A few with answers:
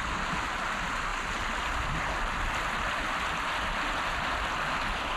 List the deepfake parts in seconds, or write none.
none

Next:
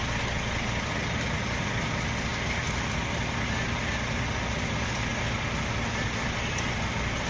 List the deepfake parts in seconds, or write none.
none

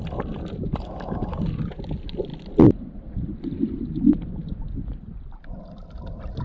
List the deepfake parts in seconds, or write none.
none

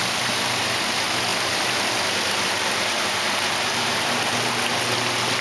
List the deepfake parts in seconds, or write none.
none

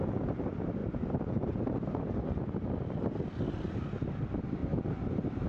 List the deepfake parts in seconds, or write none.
none

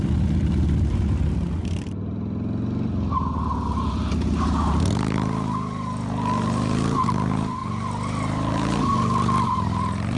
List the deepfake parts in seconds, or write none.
7.6-8.6 (vocoder, BigVGAN v2)

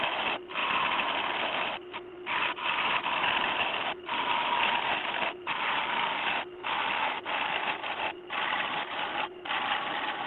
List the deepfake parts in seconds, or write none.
none